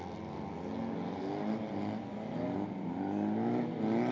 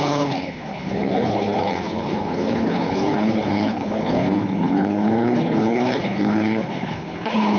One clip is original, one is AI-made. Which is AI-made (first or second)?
second